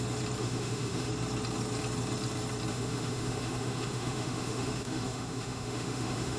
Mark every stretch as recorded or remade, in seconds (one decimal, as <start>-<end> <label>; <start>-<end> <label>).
0.0-0.4 recorded; 0.4-1.1 remade; 1.1-2.7 recorded; 2.7-6.4 remade